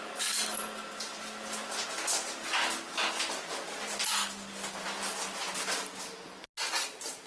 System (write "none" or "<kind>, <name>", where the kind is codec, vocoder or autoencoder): none